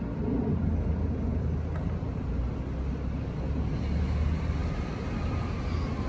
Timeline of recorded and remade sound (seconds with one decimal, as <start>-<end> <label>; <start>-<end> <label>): 0.0-6.1 recorded